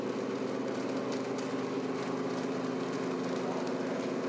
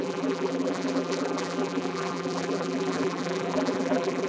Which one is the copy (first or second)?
second